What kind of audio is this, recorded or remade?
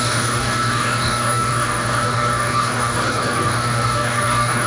remade